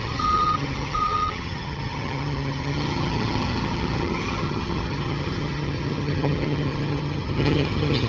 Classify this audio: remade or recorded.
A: remade